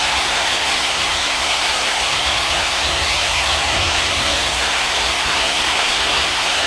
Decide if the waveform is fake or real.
fake